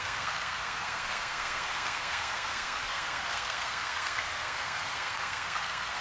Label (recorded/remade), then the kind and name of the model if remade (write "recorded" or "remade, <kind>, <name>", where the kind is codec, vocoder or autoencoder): remade, codec, SNAC